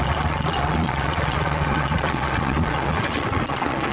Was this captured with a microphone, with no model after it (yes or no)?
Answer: no